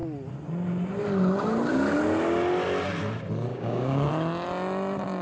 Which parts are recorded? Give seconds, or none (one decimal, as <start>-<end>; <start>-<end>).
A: 0.0-3.5; 4.1-5.2